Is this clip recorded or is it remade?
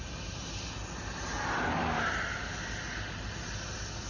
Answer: recorded